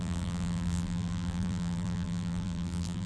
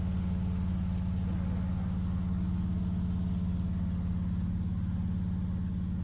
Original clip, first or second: second